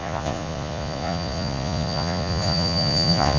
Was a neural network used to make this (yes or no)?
yes